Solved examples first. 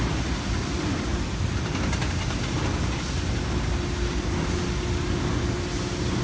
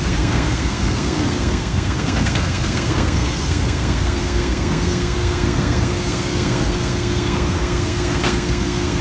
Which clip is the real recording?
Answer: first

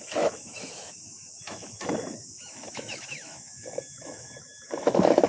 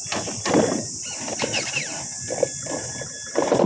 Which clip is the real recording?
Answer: second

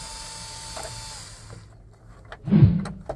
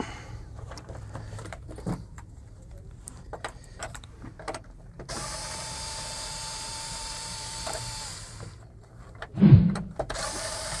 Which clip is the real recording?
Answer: first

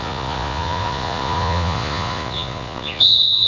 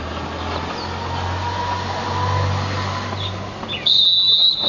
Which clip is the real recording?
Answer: second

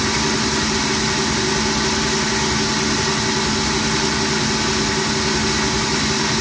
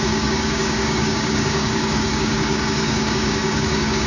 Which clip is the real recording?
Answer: first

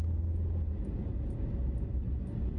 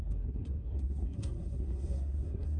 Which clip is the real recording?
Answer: first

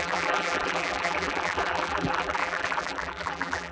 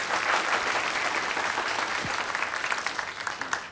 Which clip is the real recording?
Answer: second